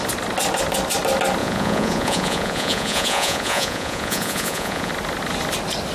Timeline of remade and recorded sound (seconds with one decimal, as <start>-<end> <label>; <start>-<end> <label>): 0.0-1.4 recorded; 1.4-4.9 remade; 4.9-5.9 recorded